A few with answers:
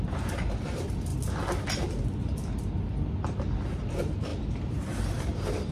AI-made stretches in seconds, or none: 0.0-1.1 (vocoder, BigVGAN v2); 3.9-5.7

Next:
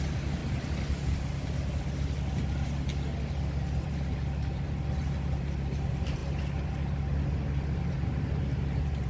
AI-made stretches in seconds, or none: 0.0-0.4 (vocoder, BigVGAN v2); 3.8-6.2; 7.9-9.1

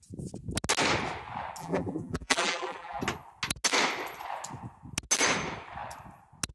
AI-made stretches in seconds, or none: 1.6-3.0 (vocoder, BigVGAN v2)

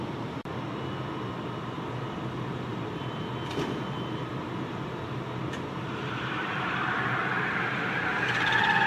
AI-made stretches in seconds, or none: 2.7-4.3 (vocoder, BigVGAN v2); 5.4-7.3